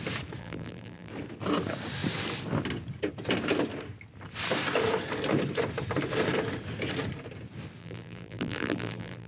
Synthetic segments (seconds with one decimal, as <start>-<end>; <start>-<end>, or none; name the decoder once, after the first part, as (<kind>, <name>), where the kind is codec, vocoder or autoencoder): 0.4-1.1 (vocoder, BigVGAN v2); 7.8-9.3